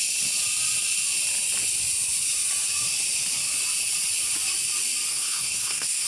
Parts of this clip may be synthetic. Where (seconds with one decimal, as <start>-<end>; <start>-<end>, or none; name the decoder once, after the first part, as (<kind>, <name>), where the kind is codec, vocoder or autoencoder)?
5.1-6.1 (codec, SNAC)